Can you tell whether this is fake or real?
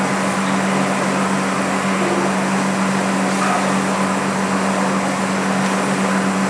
real